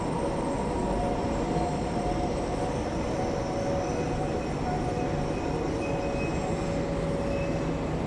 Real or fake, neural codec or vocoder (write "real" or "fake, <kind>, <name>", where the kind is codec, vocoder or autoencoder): real